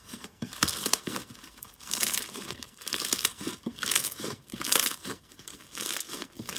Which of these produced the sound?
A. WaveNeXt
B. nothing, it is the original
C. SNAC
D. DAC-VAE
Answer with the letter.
C